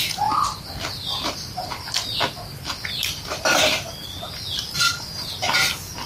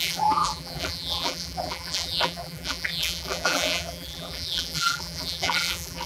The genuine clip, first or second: first